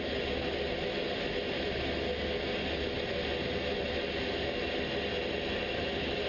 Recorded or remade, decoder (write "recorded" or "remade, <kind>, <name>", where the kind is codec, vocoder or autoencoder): recorded